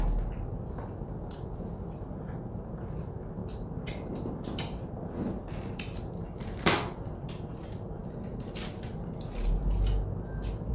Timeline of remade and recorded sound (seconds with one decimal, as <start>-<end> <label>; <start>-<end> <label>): 0.0-10.7 recorded